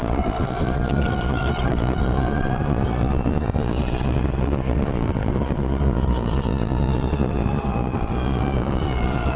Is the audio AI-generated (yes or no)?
yes